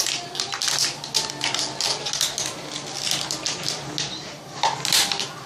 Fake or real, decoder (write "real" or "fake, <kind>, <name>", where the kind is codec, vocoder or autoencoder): real